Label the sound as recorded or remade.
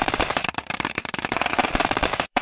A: remade